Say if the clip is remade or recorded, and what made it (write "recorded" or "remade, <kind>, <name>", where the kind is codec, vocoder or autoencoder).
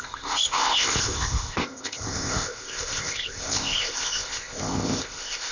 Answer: remade, codec, ZipCodec